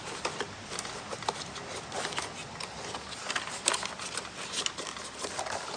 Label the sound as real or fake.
real